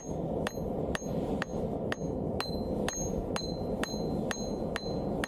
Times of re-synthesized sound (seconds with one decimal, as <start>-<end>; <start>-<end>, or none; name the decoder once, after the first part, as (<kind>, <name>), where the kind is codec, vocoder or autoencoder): none